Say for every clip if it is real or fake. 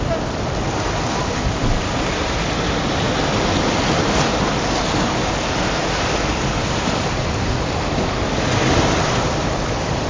real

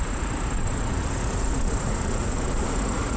fake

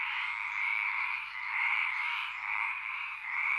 fake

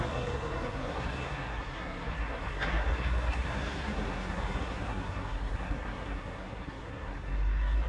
fake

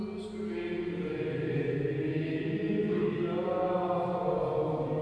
real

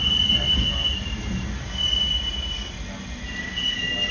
real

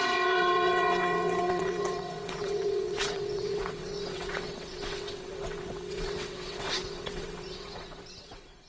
fake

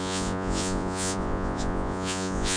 fake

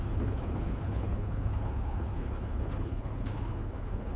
fake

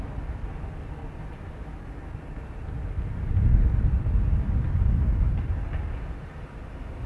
real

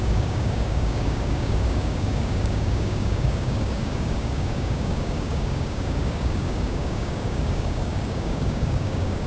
fake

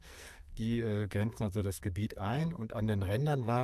fake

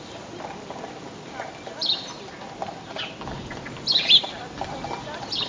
real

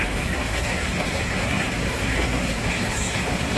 fake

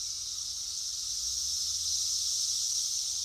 real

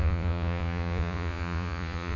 fake